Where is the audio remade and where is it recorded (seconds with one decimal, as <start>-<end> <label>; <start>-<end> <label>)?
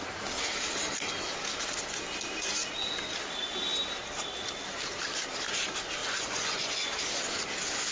0.0-6.0 recorded; 6.0-6.9 remade; 6.9-7.9 recorded